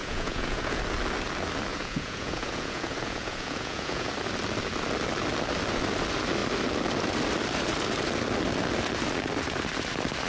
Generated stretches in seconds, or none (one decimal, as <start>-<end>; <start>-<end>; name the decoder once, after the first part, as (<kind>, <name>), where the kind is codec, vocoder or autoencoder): 0.0-0.8 (vocoder, Vocos); 1.7-4.1